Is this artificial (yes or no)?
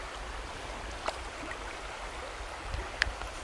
no